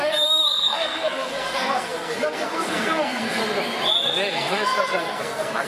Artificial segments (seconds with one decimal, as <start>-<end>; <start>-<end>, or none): 0.0-3.4; 4.3-5.7